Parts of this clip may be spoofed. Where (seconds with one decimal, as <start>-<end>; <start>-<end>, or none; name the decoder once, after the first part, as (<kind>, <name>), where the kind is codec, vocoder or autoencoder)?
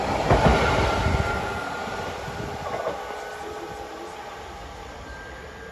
none